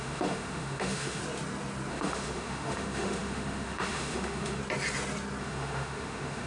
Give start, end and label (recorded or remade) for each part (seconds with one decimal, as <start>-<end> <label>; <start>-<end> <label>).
0.0-1.2 remade; 1.2-1.9 recorded; 1.9-4.6 remade; 4.6-5.4 recorded; 5.4-6.5 remade